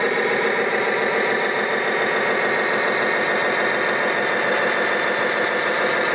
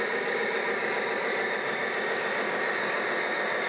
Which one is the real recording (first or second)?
first